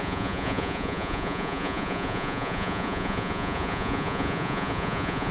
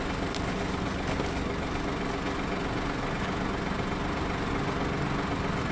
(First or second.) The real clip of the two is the second